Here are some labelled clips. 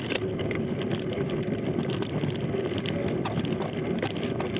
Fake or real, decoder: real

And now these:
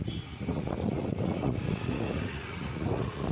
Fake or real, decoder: fake, vocoder, Vocos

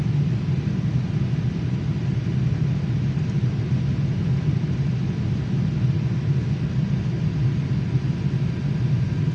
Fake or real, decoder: real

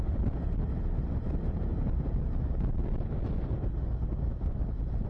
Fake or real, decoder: real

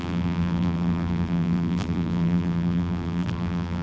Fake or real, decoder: fake, vocoder, BigVGAN v2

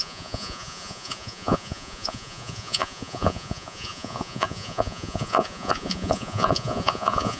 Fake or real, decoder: fake, vocoder, Vocos